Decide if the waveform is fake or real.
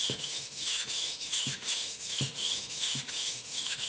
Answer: fake